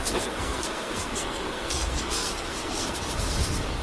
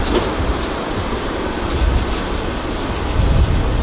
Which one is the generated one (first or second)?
first